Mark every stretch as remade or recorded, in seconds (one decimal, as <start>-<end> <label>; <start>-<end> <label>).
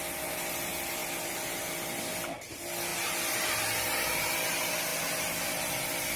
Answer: 0.0-6.2 recorded